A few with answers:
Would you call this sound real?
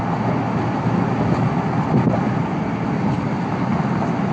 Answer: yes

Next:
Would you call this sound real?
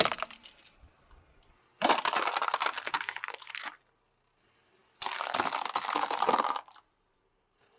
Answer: yes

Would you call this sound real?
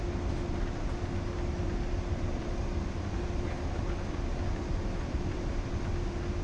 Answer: yes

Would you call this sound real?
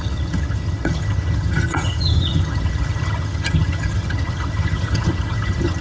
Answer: no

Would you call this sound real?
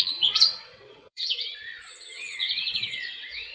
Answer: no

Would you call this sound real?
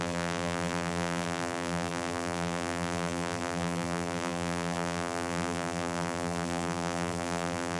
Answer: no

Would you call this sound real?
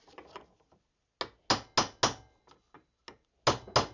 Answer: yes